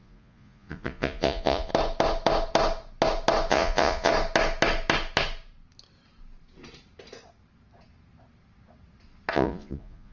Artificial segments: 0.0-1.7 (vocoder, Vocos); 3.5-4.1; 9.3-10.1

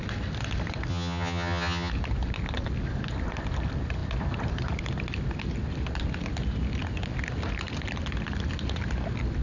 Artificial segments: 0.9-1.9 (vocoder, HiFi-GAN)

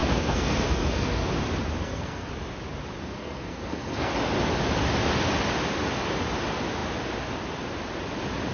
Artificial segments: 0.0-1.3 (codec, SNAC); 1.8-2.3; 3.0-4.1

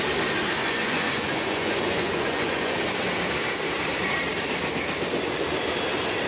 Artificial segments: 0.6-2.8 (vocoder, Vocos)

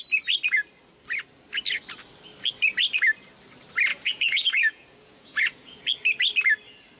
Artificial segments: 3.9-5.8 (vocoder, Vocos)

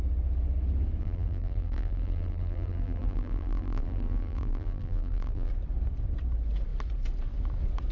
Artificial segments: 1.0-5.5 (vocoder, BigVGAN v2)